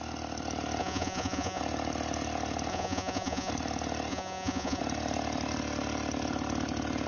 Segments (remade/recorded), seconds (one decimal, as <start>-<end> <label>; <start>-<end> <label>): 0.0-0.8 recorded; 0.8-1.6 remade; 1.6-2.7 recorded; 2.7-3.5 remade; 3.5-4.1 recorded; 4.1-4.8 remade; 4.8-7.1 recorded